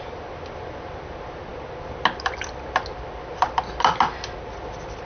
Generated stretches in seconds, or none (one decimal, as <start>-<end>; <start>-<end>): none